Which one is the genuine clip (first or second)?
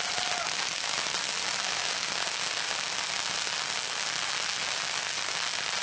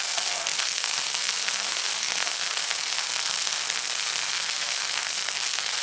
first